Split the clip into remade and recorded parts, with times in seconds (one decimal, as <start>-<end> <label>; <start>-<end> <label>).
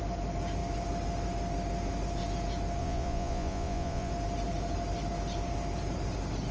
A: 0.0-2.8 recorded; 2.8-4.1 remade; 4.1-6.5 recorded